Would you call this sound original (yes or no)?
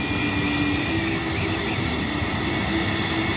no